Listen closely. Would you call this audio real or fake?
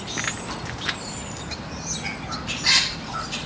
real